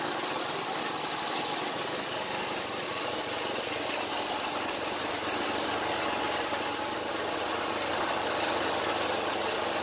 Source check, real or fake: real